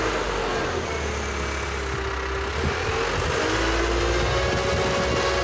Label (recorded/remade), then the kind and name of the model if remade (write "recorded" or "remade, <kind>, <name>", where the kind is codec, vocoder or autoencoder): recorded